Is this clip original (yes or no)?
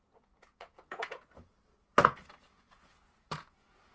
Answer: no